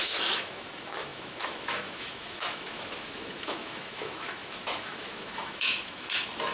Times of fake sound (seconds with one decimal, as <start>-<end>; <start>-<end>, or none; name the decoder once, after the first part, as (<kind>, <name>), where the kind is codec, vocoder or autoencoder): 0.0-6.5 (autoencoder, DAC-VAE)